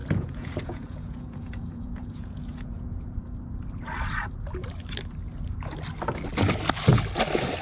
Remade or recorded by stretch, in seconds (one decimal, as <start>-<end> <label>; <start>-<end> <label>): 0.0-3.3 remade; 3.3-7.6 recorded